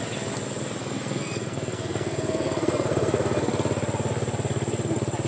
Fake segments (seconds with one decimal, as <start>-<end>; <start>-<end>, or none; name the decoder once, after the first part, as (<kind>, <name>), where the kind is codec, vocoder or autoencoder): 0.8-3.5 (codec, SNAC)

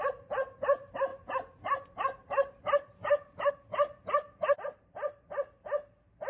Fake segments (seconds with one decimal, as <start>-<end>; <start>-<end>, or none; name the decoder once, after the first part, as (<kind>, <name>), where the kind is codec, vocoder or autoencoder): 1.1-3.5 (vocoder, BigVGAN v2); 4.0-5.6